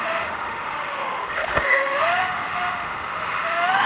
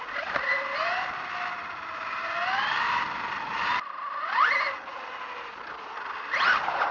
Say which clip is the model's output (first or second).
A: first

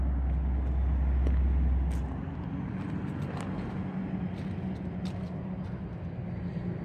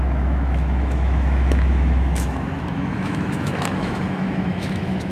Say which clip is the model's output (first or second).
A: second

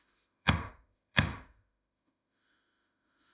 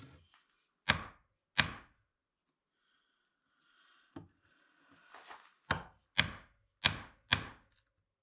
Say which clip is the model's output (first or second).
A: first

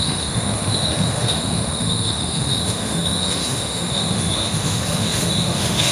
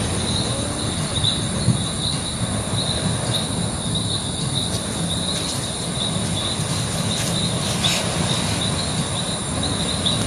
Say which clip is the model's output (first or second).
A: first